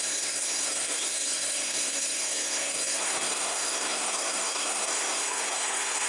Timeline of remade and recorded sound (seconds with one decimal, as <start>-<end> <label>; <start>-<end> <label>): 0.0-6.1 remade